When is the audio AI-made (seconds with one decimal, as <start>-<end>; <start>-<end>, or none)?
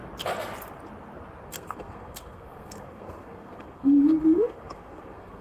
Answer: 1.5-5.4